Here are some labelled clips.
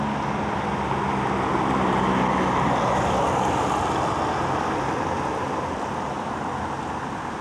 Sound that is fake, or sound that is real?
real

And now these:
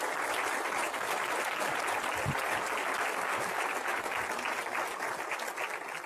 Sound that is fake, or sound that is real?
real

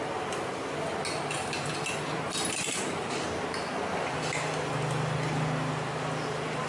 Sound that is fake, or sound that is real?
real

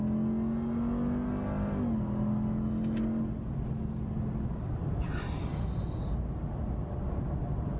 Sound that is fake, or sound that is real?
real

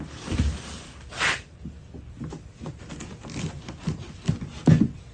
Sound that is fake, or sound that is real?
real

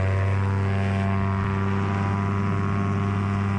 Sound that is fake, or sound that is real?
real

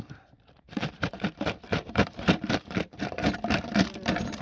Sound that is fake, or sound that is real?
fake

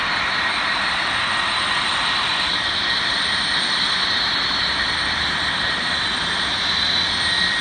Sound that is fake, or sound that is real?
fake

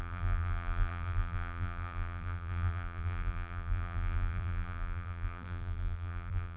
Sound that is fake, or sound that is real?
fake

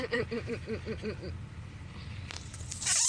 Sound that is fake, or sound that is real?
fake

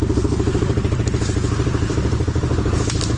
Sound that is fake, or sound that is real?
fake